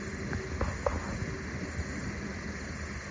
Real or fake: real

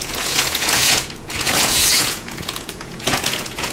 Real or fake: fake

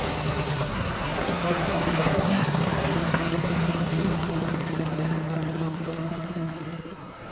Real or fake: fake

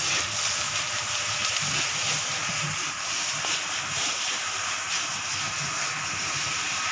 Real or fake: real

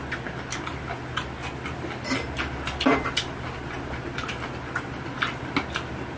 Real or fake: real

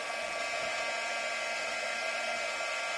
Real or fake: real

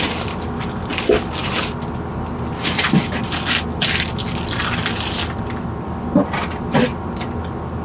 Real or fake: real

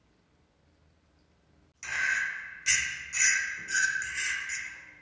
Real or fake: real